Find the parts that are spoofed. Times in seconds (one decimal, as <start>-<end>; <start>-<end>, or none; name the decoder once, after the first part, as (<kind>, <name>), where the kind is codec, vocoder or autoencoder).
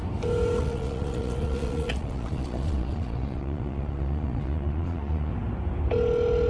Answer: 0.6-5.3 (vocoder, Vocos)